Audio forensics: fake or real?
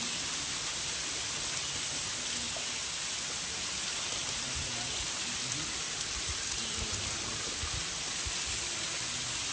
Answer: real